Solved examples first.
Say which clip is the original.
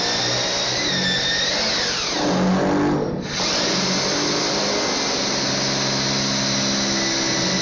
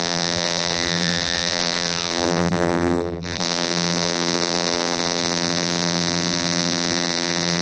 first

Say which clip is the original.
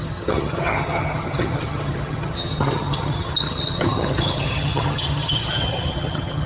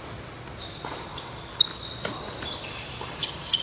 second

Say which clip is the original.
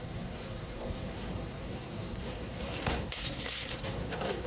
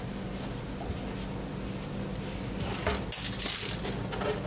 second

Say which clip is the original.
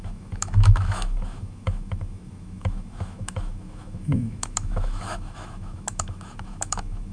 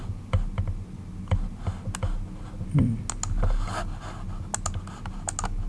second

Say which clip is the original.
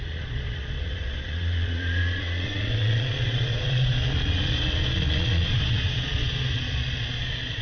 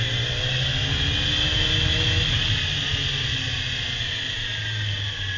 second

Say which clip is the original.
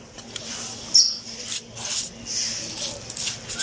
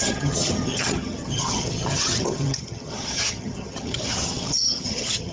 first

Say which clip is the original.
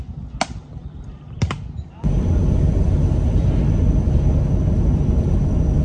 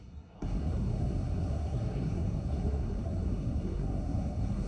first